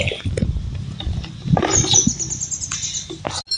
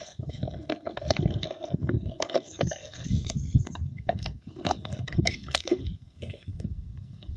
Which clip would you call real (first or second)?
first